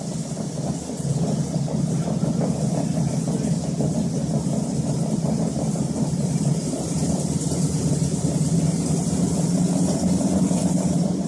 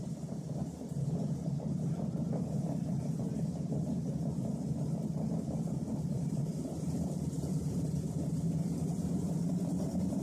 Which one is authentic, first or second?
first